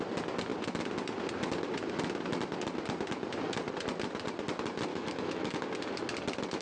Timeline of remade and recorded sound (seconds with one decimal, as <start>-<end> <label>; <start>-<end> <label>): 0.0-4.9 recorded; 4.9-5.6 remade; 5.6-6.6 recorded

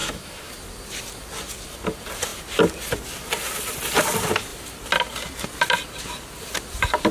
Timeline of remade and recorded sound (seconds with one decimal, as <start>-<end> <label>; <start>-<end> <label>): 0.0-0.5 remade; 0.5-7.1 recorded

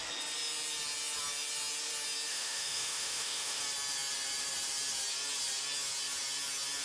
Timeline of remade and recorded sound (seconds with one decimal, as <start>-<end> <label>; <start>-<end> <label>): 0.0-2.3 recorded; 2.3-3.6 remade; 3.6-6.8 recorded